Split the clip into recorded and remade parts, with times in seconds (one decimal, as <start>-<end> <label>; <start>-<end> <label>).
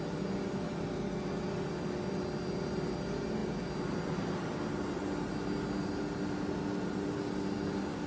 0.0-8.1 recorded